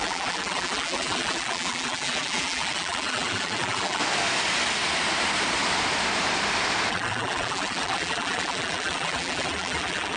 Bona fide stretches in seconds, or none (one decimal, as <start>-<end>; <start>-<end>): 4.0-6.9